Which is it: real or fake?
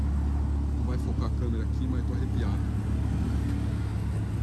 real